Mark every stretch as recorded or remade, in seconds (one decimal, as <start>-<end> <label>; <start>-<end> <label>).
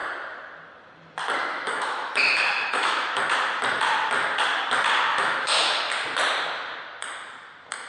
0.0-1.5 recorded; 1.5-3.2 remade; 3.2-5.1 recorded; 5.1-5.8 remade; 5.8-7.9 recorded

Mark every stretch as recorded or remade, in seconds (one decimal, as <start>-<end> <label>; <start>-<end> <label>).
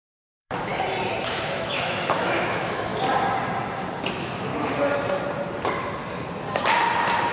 0.0-0.7 remade; 0.7-1.3 recorded; 1.3-2.9 remade; 2.9-4.1 recorded; 4.1-4.5 remade; 4.5-7.3 recorded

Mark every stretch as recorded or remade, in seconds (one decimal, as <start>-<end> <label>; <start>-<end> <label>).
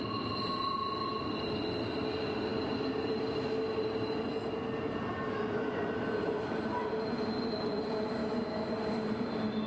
0.0-8.2 recorded; 8.2-8.7 remade; 8.7-9.7 recorded